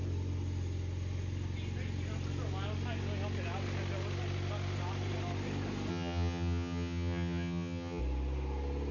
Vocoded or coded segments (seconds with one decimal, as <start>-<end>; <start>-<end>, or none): 5.9-8.0